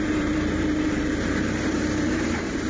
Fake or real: fake